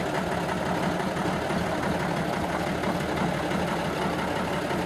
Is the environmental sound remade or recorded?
recorded